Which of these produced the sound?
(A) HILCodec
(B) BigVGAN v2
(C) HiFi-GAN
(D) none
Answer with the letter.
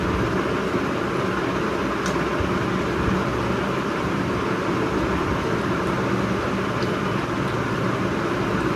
D